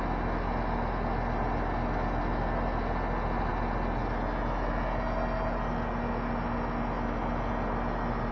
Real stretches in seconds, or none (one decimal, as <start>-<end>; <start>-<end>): 0.0-8.3